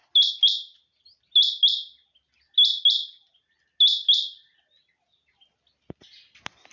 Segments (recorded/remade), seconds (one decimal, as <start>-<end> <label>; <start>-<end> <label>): 0.0-6.7 recorded